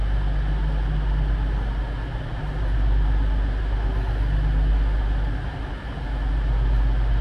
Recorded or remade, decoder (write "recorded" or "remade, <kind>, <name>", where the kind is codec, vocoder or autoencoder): recorded